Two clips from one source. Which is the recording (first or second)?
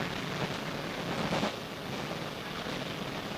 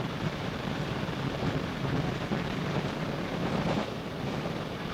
first